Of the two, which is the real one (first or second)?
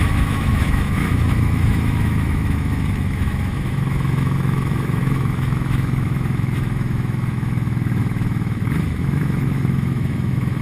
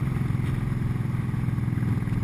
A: second